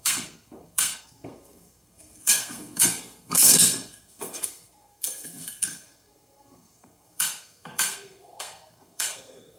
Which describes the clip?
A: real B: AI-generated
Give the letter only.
B